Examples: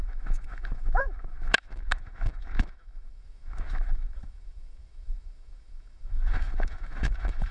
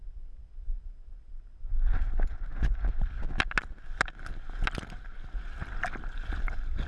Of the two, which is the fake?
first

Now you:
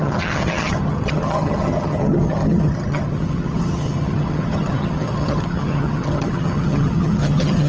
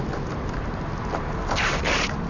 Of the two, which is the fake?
first